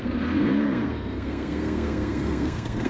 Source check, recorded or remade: remade